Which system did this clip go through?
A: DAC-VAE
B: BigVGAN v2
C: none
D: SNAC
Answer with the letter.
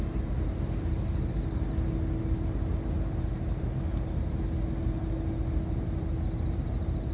C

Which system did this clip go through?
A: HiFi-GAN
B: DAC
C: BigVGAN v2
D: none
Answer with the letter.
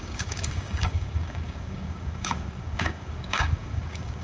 B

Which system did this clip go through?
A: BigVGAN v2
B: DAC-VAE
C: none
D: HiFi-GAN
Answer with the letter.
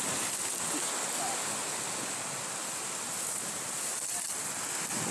C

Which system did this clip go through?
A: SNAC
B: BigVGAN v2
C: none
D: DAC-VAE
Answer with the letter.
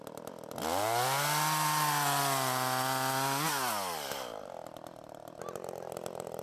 C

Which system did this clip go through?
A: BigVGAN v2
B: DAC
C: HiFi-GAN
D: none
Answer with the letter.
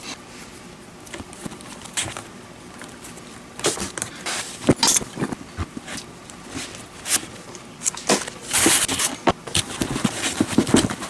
D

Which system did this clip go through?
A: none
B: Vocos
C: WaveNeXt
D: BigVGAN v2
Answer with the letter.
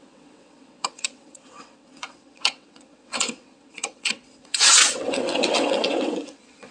C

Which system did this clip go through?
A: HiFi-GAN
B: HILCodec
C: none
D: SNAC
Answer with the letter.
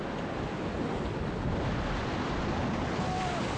C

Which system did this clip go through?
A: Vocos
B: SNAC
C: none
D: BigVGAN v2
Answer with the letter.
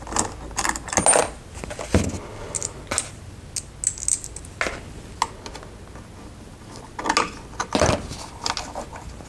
C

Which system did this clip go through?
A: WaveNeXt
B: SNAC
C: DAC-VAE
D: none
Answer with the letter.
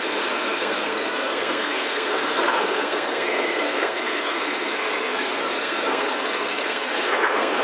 B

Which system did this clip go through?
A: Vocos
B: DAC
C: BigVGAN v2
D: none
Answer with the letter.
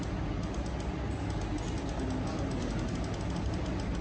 D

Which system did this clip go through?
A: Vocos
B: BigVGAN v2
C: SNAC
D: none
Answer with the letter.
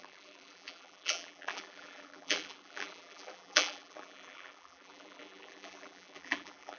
B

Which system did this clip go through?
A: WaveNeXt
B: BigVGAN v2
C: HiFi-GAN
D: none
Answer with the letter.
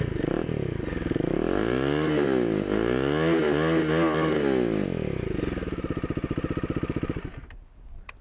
D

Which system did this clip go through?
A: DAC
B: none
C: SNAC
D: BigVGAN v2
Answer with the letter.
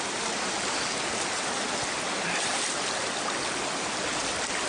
B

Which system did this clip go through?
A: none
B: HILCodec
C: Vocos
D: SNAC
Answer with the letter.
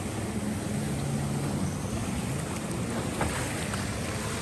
A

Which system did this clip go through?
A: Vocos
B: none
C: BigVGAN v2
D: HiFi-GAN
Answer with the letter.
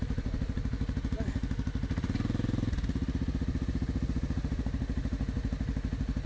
B